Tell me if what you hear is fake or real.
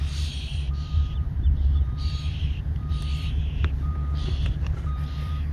fake